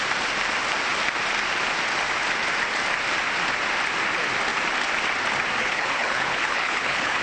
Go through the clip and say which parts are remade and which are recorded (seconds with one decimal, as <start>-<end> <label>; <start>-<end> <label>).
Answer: 0.0-5.6 recorded; 5.6-7.2 remade